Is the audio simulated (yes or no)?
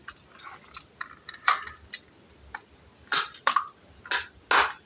no